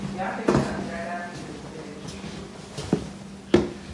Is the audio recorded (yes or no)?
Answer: yes